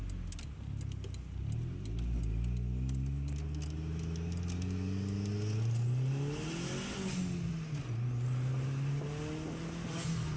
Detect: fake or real real